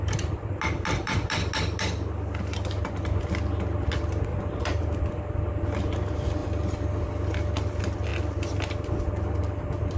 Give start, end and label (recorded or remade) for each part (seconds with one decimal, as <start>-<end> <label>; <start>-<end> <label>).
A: 0.0-4.3 recorded; 4.3-5.0 remade; 5.0-10.0 recorded